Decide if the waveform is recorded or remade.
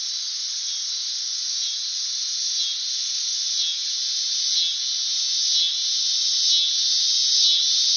recorded